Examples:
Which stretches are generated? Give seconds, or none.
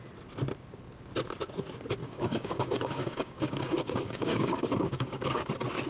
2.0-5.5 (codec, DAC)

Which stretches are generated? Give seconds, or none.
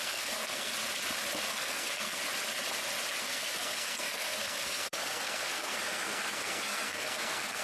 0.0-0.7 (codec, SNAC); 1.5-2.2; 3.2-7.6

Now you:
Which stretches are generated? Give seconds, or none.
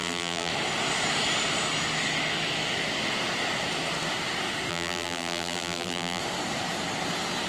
0.0-0.5 (vocoder, BigVGAN v2); 4.7-6.2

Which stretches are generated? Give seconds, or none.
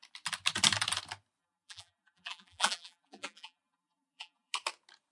1.4-4.5 (vocoder, BigVGAN v2)